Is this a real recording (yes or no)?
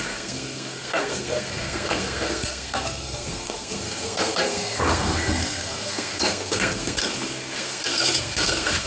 no